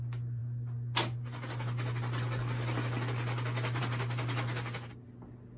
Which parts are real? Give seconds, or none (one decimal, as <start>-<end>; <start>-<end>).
0.0-5.6